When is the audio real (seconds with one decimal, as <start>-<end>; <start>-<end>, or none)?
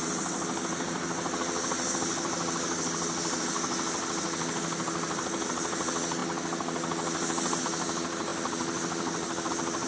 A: 0.0-9.9